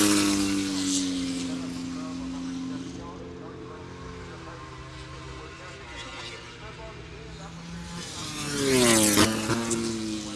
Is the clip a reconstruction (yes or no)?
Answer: no